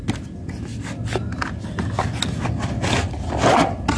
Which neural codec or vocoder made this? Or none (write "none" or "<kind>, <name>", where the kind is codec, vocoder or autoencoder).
none